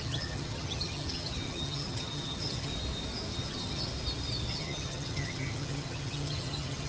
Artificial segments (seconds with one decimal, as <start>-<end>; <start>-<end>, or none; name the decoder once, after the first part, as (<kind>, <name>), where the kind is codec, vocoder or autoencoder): 0.0-2.7 (vocoder, HiFi-GAN); 3.3-3.9; 4.5-6.9

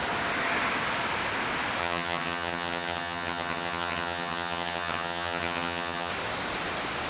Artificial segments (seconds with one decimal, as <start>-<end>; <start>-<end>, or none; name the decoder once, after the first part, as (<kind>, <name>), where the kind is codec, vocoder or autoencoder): 1.8-6.1 (vocoder, HiFi-GAN)

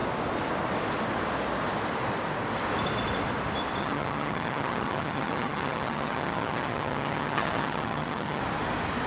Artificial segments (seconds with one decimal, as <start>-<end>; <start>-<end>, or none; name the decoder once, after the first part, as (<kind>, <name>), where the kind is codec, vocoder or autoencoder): 3.8-8.4 (vocoder, HiFi-GAN)

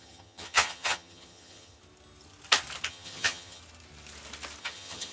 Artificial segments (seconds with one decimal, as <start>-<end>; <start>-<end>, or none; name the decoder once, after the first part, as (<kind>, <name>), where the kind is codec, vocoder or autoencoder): 0.0-1.8 (vocoder, HiFi-GAN); 2.9-3.6; 4.6-5.1

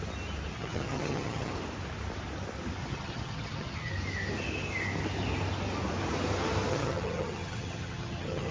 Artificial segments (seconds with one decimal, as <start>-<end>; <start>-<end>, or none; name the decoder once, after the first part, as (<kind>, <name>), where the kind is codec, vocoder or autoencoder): 0.5-1.5 (vocoder, HiFi-GAN); 2.8-3.9; 6.7-8.5

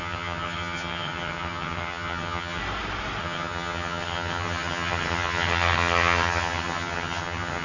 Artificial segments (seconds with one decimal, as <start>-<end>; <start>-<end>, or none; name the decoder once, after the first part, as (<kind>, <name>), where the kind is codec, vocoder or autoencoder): 0.0-2.6 (vocoder, HiFi-GAN); 3.2-7.6